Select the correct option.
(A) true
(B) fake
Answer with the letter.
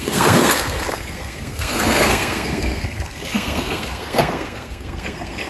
B